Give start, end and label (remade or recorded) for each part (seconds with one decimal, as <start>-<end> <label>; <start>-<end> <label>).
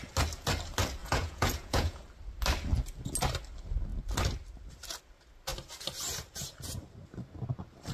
0.0-1.0 recorded; 1.0-2.0 remade; 2.0-7.9 recorded